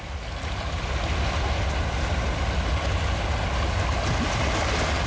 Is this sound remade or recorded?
recorded